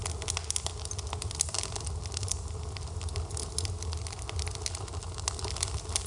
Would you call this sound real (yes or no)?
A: yes